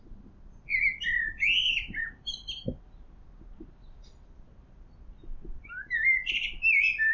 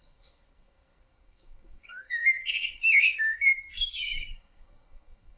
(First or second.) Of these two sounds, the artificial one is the second